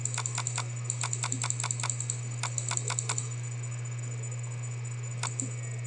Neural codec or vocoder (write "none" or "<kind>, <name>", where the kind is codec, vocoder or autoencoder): none